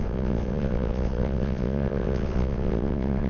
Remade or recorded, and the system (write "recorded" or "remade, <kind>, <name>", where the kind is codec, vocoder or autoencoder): remade, vocoder, WaveNeXt